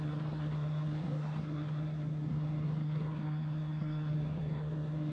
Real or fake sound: fake